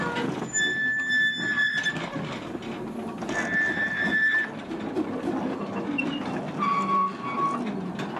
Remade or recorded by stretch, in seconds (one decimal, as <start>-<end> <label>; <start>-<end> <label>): 0.0-8.2 recorded